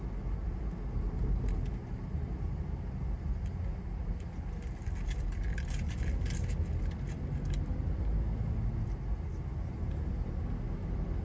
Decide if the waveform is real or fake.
real